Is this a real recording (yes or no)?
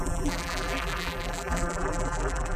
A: no